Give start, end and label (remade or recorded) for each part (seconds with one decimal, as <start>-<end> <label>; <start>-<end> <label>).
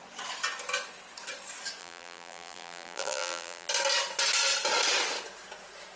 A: 0.0-1.8 recorded; 1.8-3.7 remade; 3.7-6.0 recorded